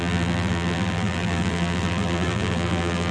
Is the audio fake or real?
fake